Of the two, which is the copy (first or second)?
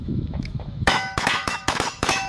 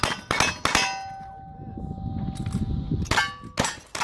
first